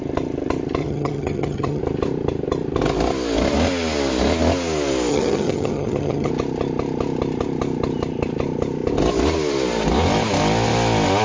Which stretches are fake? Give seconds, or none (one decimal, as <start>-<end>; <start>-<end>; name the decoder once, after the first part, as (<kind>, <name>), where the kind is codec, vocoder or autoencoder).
0.8-1.8 (vocoder, HiFi-GAN); 5.1-6.3